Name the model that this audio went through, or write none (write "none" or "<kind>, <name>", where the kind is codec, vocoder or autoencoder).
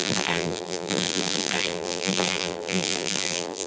vocoder, BigVGAN v2